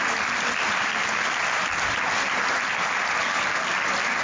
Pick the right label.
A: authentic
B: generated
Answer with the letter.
A